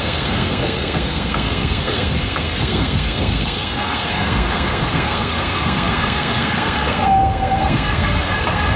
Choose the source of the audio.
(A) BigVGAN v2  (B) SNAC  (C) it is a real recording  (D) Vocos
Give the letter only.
B